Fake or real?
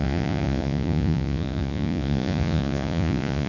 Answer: fake